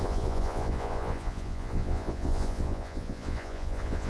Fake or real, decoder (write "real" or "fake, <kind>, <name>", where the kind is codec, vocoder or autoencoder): fake, vocoder, Vocos